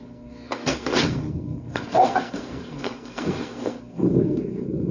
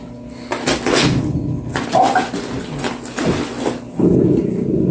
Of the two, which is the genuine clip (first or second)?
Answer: second